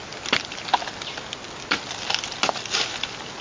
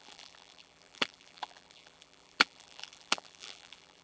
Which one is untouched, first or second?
first